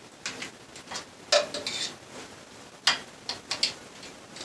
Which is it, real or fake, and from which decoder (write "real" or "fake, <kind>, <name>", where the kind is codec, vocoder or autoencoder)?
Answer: real